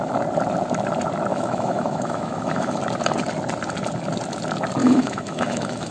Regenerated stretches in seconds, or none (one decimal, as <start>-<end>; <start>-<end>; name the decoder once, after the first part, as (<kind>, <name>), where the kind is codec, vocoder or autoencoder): 1.3-2.8 (autoencoder, DAC-VAE); 4.8-5.9